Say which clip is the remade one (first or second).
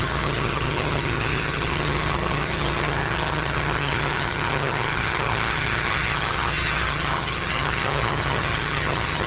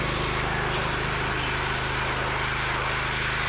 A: first